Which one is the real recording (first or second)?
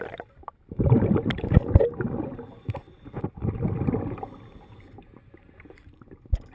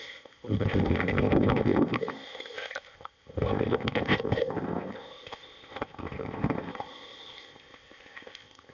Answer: first